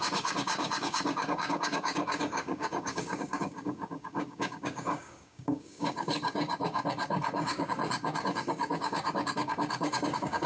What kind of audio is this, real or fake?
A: fake